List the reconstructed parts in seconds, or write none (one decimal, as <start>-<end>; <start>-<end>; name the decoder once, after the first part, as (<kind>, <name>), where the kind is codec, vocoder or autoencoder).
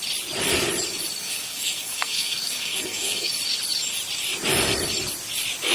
1.2-3.3 (codec, SNAC)